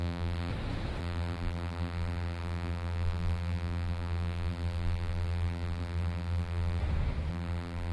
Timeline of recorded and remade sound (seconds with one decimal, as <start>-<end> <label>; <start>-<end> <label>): 0.0-0.5 remade; 0.5-1.0 recorded; 1.0-6.8 remade; 6.8-7.3 recorded; 7.3-7.9 remade